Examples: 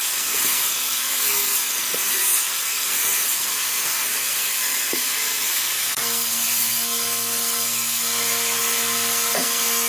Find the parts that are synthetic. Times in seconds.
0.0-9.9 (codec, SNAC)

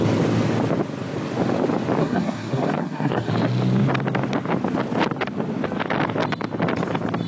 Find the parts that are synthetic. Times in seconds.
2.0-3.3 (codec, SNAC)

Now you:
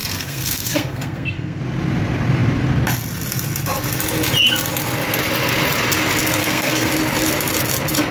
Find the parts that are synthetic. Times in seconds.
0.0-1.6 (codec, SNAC); 6.4-6.9